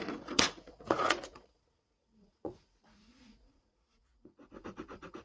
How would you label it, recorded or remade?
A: remade